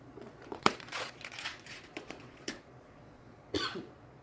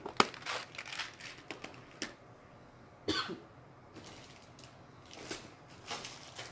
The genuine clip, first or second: second